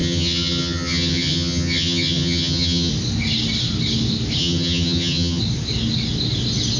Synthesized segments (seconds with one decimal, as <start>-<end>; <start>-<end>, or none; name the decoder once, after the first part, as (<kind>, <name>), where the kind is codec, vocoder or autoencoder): 0.0-2.9 (vocoder, HiFi-GAN); 4.4-5.4